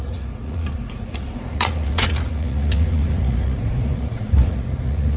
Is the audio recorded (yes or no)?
no